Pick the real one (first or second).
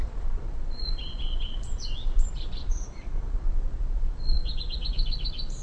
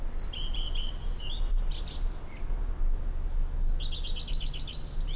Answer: second